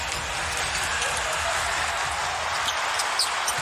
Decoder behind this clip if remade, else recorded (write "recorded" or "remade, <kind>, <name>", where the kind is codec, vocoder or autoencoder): recorded